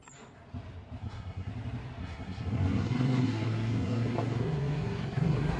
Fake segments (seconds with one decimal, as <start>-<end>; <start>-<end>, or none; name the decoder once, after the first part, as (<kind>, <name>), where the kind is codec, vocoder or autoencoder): 1.0-1.5 (codec, SNAC); 2.0-5.6